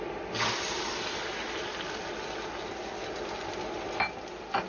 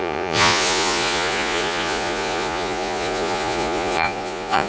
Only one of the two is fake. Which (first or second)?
second